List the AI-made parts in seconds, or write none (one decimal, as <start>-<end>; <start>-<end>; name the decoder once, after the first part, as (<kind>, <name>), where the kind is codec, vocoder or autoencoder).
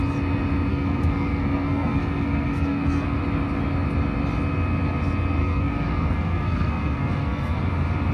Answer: 0.7-3.2 (codec, SNAC); 5.4-7.6